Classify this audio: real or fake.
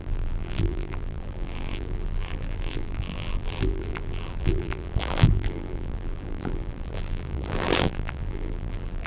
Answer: fake